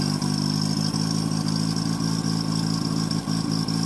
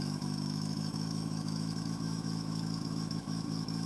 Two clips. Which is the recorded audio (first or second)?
first